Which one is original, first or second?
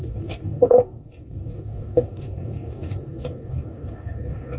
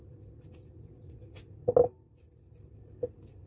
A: second